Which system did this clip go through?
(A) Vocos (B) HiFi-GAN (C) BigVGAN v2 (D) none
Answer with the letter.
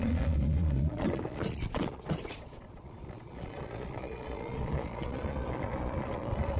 A